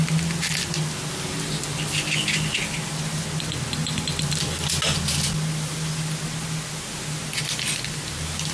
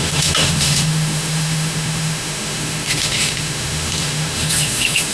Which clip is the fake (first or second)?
second